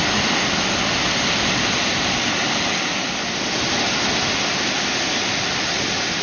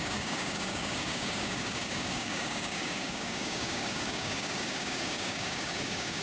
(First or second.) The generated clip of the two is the second